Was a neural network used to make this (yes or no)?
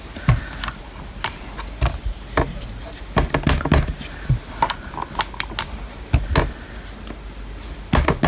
no